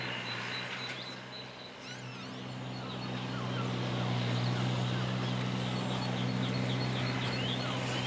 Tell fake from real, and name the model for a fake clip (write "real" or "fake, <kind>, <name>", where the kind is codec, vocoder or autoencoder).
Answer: real